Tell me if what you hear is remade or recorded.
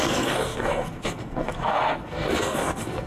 remade